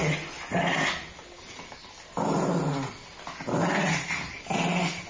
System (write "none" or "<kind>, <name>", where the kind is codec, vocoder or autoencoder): none